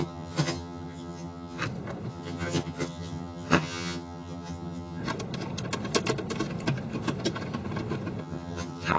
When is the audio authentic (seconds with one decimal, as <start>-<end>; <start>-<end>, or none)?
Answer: 1.6-2.1; 5.0-8.2